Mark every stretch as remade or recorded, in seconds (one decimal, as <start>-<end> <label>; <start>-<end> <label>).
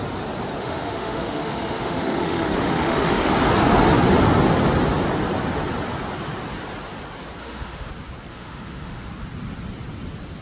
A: 0.0-0.6 recorded; 0.6-3.3 remade; 3.3-7.4 recorded; 7.4-7.9 remade; 7.9-8.3 recorded; 8.3-9.1 remade; 9.1-10.4 recorded